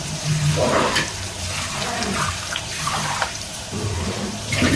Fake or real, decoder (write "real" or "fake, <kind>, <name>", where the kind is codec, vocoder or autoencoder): fake, vocoder, BigVGAN v2